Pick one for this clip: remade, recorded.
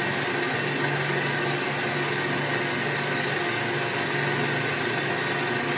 recorded